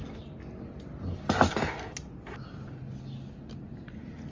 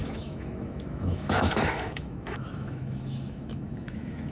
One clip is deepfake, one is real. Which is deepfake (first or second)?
second